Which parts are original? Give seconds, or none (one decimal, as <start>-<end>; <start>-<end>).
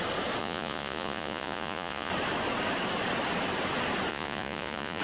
0.0-0.4; 2.1-4.1